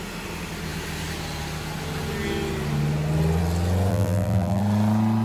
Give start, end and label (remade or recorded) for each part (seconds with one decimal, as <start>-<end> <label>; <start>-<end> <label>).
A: 0.0-3.9 recorded; 3.9-4.6 remade; 4.6-5.2 recorded